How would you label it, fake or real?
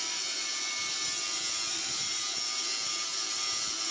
real